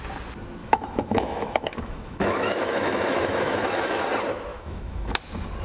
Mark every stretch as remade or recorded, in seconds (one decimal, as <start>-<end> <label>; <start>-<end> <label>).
0.0-0.6 recorded; 0.6-4.0 remade; 4.0-4.5 recorded; 4.5-5.1 remade; 5.1-5.6 recorded